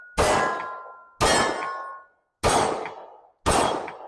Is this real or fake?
real